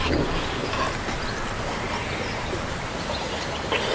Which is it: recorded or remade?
recorded